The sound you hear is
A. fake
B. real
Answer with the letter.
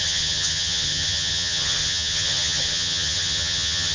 A